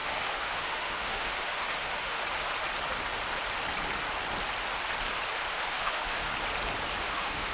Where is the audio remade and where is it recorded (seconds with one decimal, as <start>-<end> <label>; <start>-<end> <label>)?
0.0-2.2 remade; 2.2-5.5 recorded; 5.5-6.3 remade; 6.3-7.0 recorded; 7.0-7.5 remade

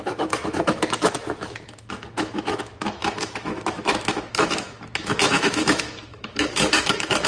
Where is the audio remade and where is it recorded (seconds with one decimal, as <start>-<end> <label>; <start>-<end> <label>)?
0.0-7.3 remade

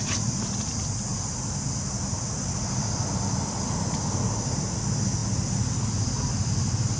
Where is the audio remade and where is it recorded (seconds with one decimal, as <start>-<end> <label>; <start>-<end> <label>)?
0.0-7.0 recorded